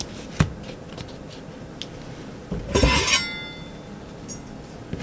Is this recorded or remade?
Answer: recorded